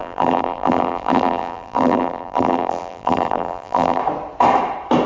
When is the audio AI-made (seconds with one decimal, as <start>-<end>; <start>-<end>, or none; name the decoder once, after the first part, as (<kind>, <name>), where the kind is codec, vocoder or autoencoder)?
0.0-4.0 (vocoder, BigVGAN v2)